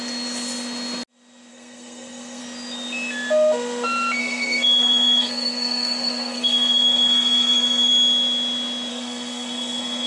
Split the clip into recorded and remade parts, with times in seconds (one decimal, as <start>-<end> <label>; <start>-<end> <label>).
0.0-1.5 recorded; 1.5-2.4 remade; 2.4-4.2 recorded; 4.2-7.9 remade; 7.9-8.9 recorded; 8.9-10.1 remade